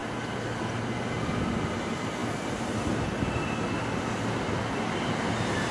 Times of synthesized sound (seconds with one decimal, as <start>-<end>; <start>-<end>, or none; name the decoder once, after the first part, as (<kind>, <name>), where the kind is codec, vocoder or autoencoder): none